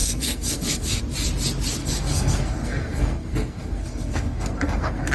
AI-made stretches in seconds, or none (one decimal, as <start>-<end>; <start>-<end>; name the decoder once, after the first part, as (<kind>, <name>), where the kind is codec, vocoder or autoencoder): 0.0-1.0 (codec, SNAC); 1.8-5.1